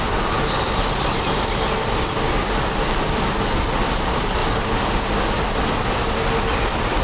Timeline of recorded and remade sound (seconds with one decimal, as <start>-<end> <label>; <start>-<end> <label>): 0.0-7.0 recorded